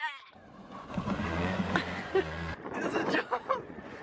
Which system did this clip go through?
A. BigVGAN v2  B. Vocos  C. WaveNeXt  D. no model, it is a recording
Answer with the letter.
B